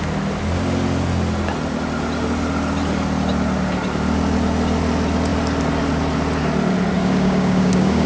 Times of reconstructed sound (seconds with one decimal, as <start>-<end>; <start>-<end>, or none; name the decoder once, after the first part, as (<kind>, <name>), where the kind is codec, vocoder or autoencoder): 7.0-8.1 (codec, DAC)